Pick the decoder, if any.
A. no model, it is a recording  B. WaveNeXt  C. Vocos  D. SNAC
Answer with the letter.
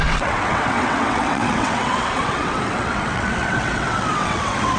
B